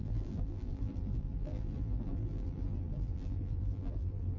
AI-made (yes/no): yes